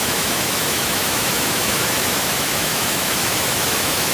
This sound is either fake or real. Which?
fake